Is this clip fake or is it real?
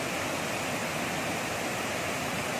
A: real